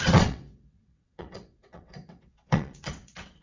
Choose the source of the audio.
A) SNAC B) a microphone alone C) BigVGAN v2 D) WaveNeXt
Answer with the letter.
D